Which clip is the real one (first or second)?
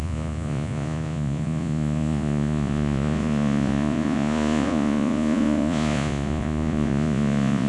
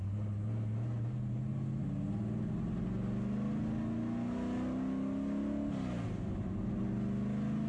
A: second